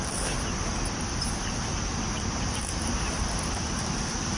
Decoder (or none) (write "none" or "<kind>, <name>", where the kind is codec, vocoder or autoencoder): none